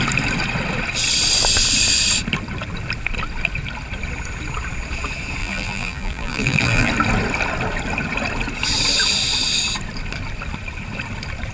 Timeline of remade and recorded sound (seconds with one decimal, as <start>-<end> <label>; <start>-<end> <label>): 0.0-5.4 recorded; 5.4-6.9 remade; 6.9-11.5 recorded